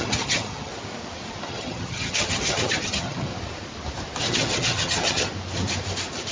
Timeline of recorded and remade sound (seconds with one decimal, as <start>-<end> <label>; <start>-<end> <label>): 0.0-0.7 remade; 0.7-1.5 recorded; 1.5-3.3 remade; 3.3-4.2 recorded; 4.2-5.3 remade; 5.3-6.3 recorded